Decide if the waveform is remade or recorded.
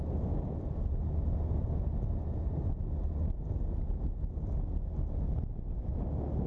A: recorded